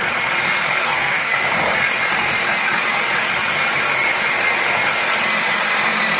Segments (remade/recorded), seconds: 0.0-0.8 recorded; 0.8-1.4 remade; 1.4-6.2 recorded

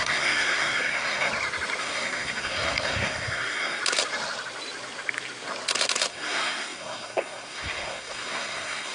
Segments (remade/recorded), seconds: 0.0-1.3 remade; 1.3-1.8 recorded; 1.8-3.8 remade; 3.8-6.1 recorded; 6.1-8.9 remade

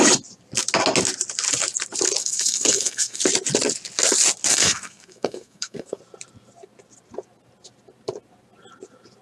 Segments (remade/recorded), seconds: 0.0-2.2 recorded; 2.2-3.2 remade; 3.2-4.5 recorded; 4.5-6.0 remade; 6.0-9.2 recorded

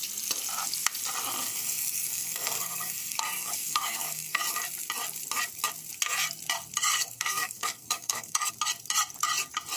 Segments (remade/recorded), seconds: 0.0-1.5 recorded; 1.5-4.4 remade; 4.4-6.9 recorded; 6.9-8.5 remade; 8.5-9.8 recorded

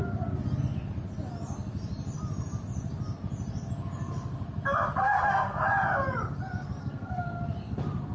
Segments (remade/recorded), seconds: 0.0-5.0 recorded; 5.0-5.6 remade; 5.6-6.8 recorded; 6.8-7.4 remade; 7.4-8.1 recorded

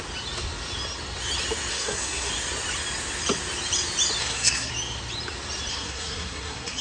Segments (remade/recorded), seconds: 0.0-1.7 recorded; 1.7-2.3 remade; 2.3-4.2 recorded; 4.2-4.7 remade; 4.7-5.7 recorded; 5.7-6.8 remade

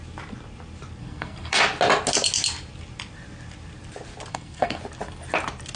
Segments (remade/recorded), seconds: 0.0-1.0 recorded; 1.0-1.6 remade; 1.6-4.3 recorded; 4.3-4.8 remade; 4.8-5.8 recorded